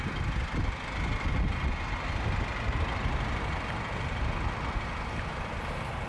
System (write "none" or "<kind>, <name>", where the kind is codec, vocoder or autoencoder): none